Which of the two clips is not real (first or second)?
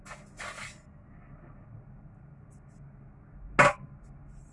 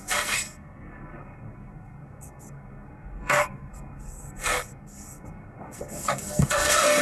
second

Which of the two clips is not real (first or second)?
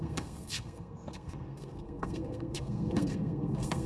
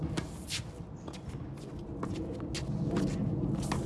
first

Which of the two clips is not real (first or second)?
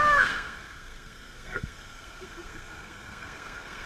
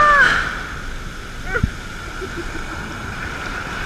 first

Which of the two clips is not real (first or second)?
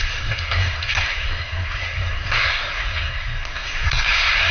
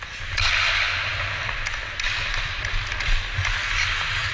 first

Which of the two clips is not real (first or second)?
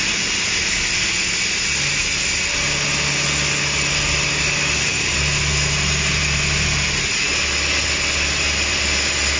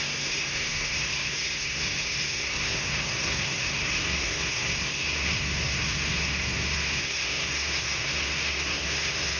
second